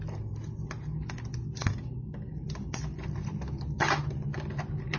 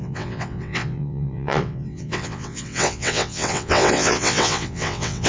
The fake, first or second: second